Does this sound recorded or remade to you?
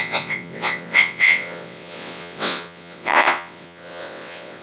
remade